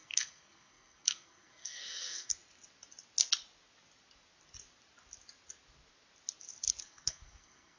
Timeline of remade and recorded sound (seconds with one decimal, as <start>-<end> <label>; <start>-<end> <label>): 0.0-2.3 remade; 2.3-6.8 recorded; 6.8-7.8 remade